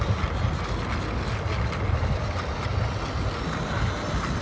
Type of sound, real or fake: real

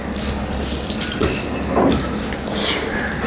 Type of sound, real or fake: real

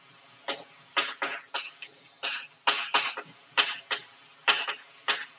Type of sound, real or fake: real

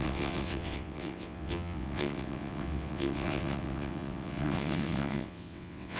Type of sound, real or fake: fake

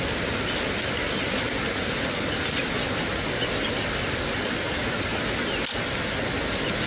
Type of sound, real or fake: real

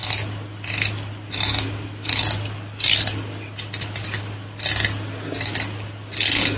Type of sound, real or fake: real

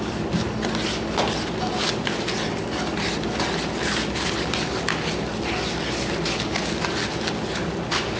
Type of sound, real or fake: real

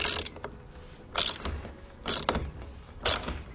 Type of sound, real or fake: real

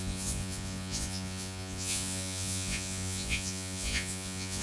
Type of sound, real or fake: fake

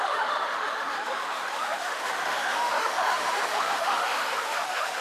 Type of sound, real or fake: fake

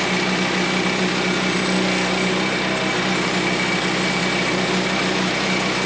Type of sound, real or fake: real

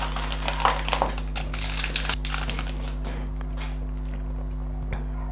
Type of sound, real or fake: real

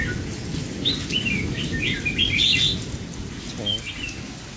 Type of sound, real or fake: real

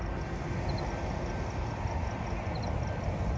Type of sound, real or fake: real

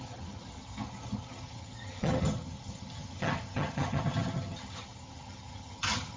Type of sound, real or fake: fake